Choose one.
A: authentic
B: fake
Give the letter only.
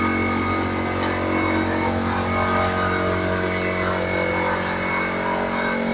A